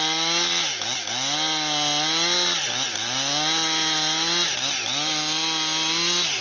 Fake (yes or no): no